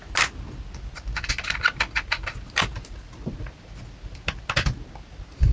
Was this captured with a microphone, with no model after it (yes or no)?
yes